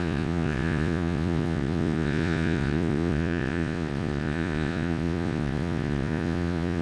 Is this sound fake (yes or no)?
yes